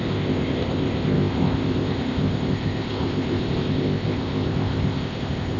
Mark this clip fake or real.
fake